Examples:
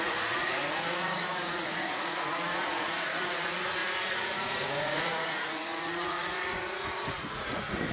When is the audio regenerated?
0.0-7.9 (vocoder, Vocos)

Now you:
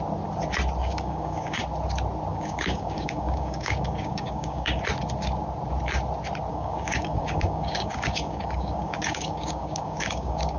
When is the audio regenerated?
0.8-1.6 (codec, DAC); 2.3-4.8; 6.5-10.6

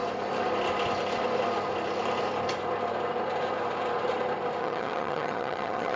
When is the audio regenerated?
4.6-6.0 (vocoder, HiFi-GAN)

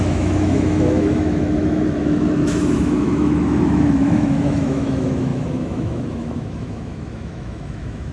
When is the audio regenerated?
0.0-8.1 (autoencoder, DAC-VAE)